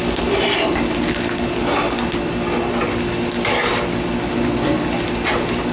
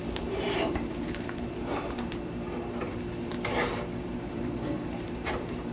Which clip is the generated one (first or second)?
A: second